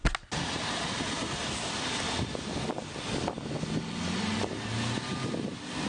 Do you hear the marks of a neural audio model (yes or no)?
no